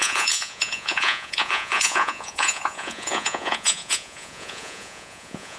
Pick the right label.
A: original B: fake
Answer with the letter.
B